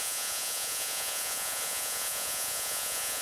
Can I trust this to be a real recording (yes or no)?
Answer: no